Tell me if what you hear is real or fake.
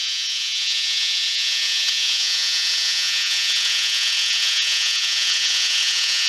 fake